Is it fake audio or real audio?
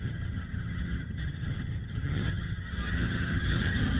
fake